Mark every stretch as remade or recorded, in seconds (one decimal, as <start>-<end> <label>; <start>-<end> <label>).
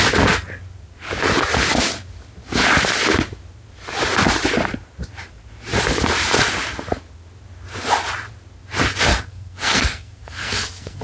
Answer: 0.0-9.1 recorded; 9.1-11.0 remade